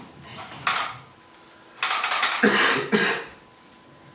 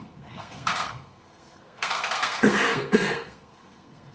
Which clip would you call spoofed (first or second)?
second